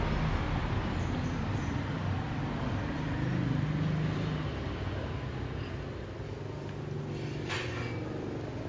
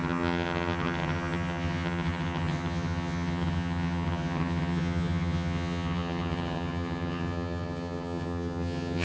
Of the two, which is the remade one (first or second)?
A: second